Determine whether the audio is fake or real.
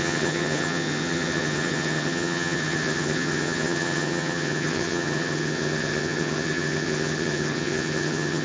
fake